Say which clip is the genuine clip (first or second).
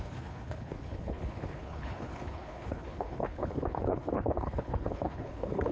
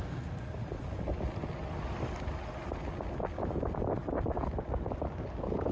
second